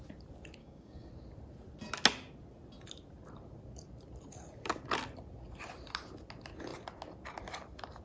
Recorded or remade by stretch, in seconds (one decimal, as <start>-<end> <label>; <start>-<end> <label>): 0.0-0.6 recorded; 0.6-1.1 remade; 1.1-8.0 recorded